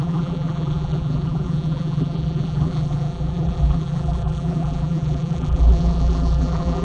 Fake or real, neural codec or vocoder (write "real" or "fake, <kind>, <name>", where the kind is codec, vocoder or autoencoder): fake, vocoder, BigVGAN v2